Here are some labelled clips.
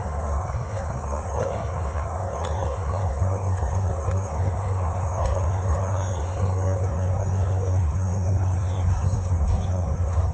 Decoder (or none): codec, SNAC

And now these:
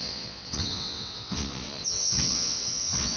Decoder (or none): vocoder, WaveNeXt